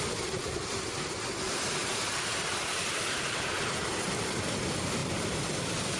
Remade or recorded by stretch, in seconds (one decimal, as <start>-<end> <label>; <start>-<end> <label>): 0.0-6.0 recorded